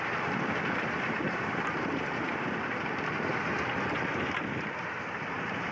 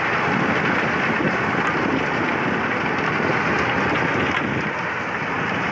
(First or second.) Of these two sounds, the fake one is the first